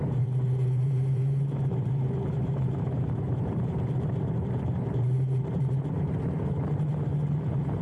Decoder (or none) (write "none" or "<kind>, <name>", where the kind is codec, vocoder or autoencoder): vocoder, BigVGAN v2